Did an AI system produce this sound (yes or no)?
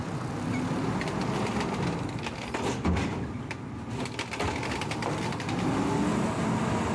no